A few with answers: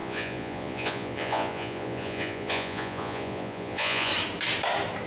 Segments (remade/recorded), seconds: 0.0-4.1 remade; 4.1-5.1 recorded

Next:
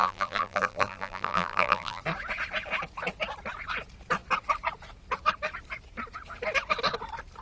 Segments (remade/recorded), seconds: 0.0-2.0 remade; 2.0-7.4 recorded